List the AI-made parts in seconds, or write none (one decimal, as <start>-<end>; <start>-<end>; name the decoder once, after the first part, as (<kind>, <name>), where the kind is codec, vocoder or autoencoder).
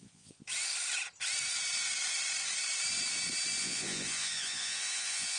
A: 0.0-0.4 (vocoder, Vocos); 3.6-5.4